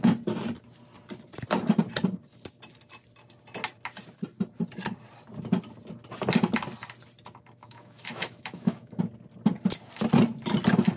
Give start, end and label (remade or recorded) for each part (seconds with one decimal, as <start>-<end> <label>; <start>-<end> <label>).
0.0-7.6 recorded; 7.6-9.0 remade; 9.0-11.0 recorded